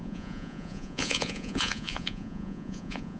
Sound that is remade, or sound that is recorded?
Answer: remade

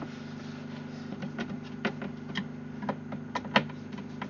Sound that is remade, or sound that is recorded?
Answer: recorded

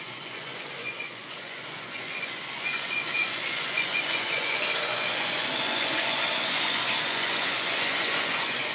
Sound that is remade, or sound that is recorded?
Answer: remade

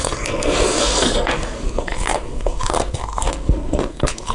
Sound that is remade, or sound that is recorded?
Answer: remade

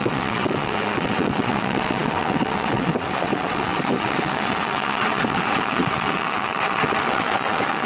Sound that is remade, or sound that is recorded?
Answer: remade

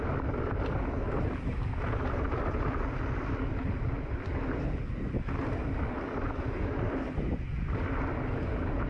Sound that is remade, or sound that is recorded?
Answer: recorded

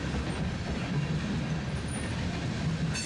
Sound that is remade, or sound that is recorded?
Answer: recorded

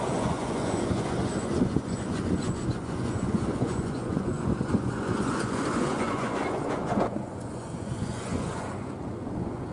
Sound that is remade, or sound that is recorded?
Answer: remade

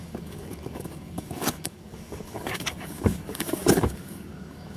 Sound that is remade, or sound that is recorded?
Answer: remade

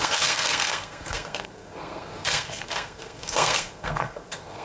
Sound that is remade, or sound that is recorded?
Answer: remade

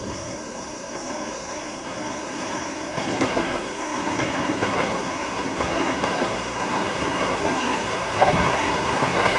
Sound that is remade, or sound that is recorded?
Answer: remade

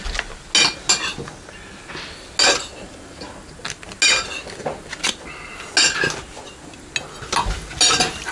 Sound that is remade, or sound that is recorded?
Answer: recorded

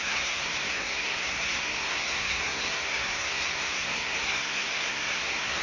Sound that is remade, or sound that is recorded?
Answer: remade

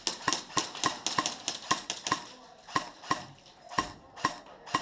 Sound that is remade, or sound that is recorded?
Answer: recorded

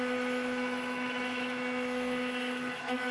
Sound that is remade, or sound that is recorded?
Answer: remade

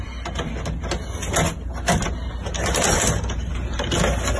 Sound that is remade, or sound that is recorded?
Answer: recorded